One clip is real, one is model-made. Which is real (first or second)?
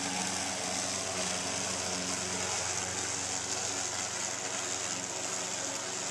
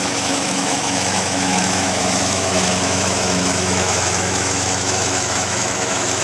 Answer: first